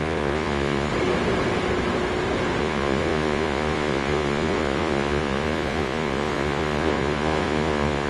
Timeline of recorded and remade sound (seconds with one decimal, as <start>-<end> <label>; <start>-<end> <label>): 0.0-0.9 remade; 0.9-2.6 recorded; 2.6-8.1 remade